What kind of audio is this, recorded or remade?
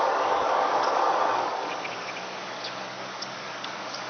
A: remade